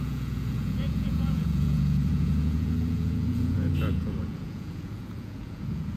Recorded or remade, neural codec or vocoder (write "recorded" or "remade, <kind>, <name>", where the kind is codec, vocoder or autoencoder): remade, vocoder, Vocos